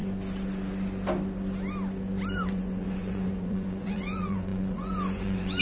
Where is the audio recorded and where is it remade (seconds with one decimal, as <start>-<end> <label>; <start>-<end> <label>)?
0.0-2.3 recorded; 2.3-5.6 remade